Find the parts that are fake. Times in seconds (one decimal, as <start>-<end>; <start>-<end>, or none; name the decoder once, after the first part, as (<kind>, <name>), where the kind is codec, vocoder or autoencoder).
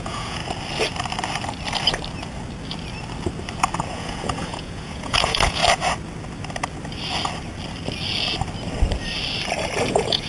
0.0-0.4 (vocoder, Vocos); 3.9-5.6; 9.9-10.3